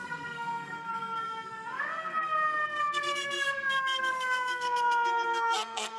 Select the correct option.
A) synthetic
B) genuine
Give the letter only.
A